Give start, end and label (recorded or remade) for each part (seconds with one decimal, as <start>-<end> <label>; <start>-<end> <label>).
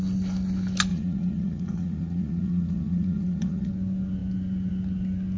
0.0-0.9 recorded; 0.9-3.7 remade; 3.7-5.4 recorded